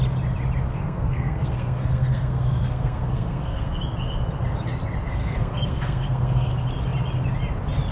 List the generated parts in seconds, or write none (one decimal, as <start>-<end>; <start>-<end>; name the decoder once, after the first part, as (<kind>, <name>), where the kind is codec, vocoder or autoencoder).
0.7-3.8 (codec, SNAC); 5.2-6.5